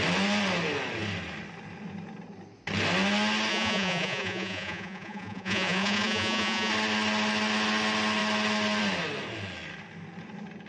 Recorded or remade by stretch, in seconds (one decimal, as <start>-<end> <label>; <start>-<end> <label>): 0.0-3.5 recorded; 3.5-6.7 remade; 6.7-10.7 recorded